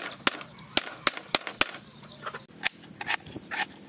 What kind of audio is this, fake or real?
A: real